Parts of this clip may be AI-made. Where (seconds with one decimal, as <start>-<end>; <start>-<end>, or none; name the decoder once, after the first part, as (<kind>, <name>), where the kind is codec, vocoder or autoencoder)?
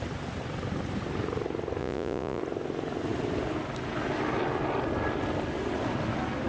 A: 1.8-2.4 (vocoder, Vocos)